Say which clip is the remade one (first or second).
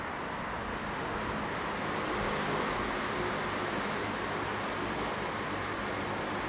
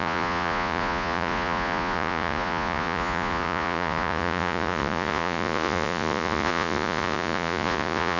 second